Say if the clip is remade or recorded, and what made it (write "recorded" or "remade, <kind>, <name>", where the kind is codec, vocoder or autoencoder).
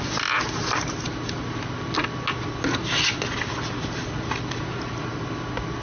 recorded